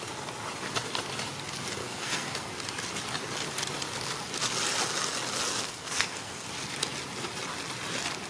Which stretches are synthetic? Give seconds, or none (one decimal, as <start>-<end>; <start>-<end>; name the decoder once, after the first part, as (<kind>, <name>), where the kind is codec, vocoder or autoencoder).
1.8-2.5 (codec, SNAC); 5.5-6.5